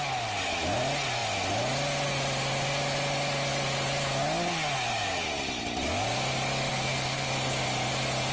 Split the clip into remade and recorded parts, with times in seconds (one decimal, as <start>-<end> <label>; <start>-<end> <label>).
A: 0.0-6.7 recorded; 6.7-7.3 remade; 7.3-8.3 recorded